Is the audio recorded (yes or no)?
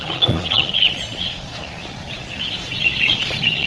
no